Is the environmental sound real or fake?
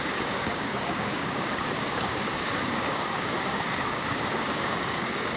fake